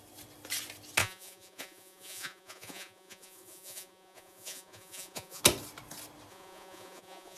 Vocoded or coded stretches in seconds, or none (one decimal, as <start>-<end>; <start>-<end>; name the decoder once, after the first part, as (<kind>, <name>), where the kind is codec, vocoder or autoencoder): 1.0-5.4 (vocoder, Vocos); 6.3-7.4